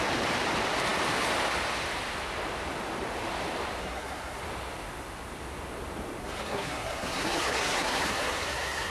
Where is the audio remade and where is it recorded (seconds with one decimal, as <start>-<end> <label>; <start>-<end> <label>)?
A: 0.0-3.8 recorded; 3.8-4.4 remade; 4.4-6.2 recorded; 6.2-8.9 remade